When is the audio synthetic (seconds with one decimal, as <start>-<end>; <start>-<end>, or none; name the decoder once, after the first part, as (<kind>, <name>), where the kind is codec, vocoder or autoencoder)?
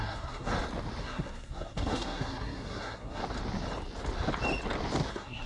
0.0-0.5 (codec, SNAC); 1.0-3.2; 5.1-5.5